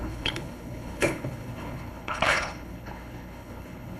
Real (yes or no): no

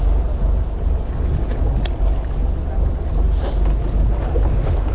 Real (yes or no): yes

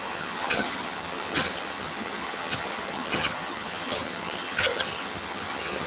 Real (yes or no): no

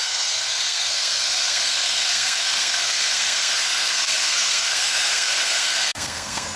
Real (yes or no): no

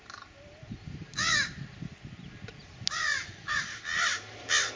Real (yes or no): yes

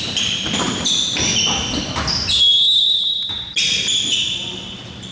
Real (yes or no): yes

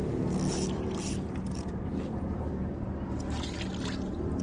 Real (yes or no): yes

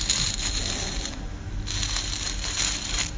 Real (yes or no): yes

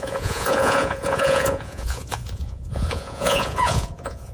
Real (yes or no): no